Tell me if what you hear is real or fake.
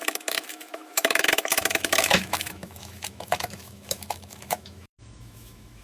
fake